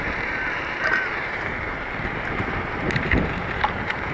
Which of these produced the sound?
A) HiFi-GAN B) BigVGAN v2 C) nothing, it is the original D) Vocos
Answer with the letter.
B